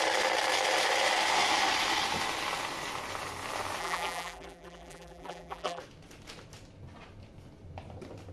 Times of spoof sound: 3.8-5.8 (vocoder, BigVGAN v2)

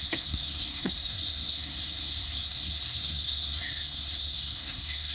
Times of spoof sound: 0.0-5.1 (codec, SNAC)

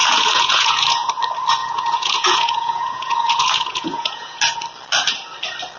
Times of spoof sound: 0.0-1.1 (vocoder, Vocos); 1.6-4.4

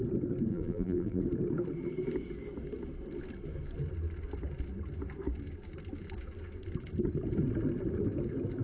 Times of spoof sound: 0.5-1.2 (vocoder, BigVGAN v2)

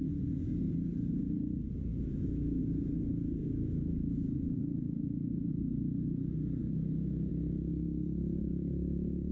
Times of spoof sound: 1.9-2.6 (autoencoder, DAC-VAE); 3.4-5.5; 6.6-7.3; 8.5-9.3

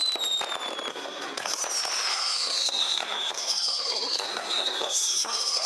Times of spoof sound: 0.9-1.6 (codec, SNAC); 2.1-5.7

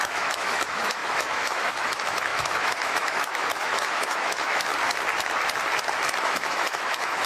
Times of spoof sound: 0.0-4.7 (autoencoder, DAC-VAE); 6.2-7.3